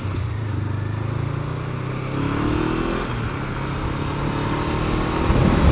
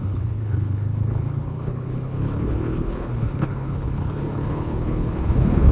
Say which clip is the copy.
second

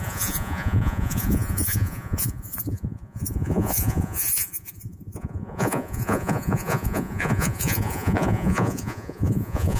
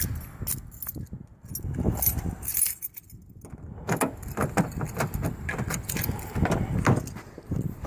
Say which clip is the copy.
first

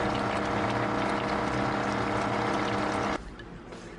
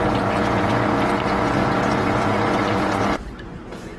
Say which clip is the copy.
second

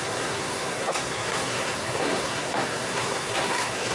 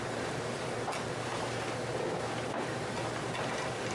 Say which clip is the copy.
first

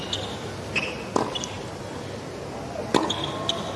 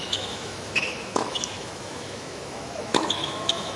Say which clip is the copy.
second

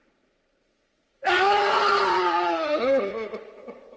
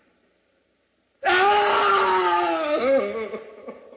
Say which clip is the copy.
first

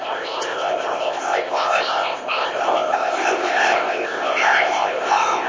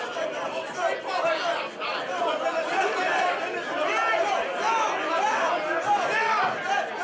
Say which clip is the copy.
first